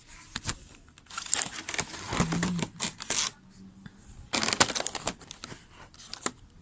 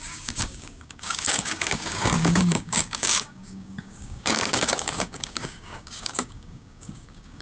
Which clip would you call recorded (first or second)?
first